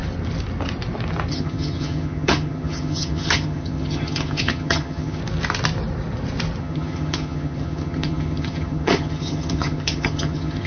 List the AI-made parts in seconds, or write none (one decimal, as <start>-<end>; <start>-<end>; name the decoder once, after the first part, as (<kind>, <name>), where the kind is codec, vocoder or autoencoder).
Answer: 1.3-5.2 (vocoder, HiFi-GAN); 6.6-10.7